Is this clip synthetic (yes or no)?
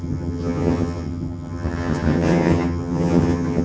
yes